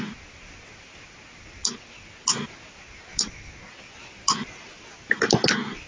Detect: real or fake real